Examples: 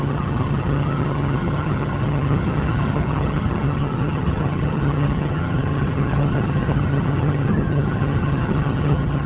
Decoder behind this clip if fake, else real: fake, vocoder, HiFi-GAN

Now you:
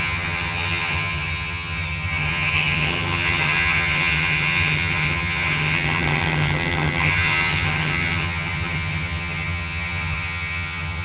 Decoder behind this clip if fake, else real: fake, vocoder, HiFi-GAN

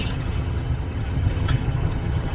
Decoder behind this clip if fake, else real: fake, vocoder, HiFi-GAN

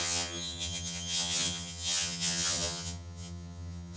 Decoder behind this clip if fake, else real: fake, vocoder, HiFi-GAN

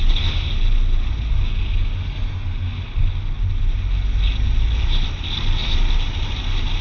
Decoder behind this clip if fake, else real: real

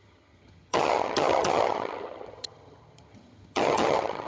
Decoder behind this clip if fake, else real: fake, vocoder, HiFi-GAN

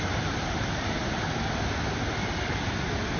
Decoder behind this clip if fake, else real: real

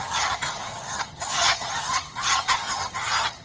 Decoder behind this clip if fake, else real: fake, vocoder, HiFi-GAN